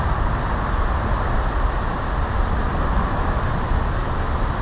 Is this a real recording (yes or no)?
no